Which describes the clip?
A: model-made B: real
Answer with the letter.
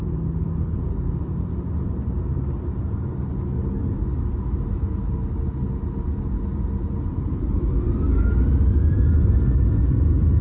B